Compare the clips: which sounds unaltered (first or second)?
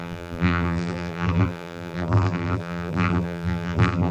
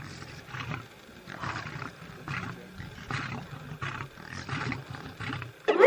second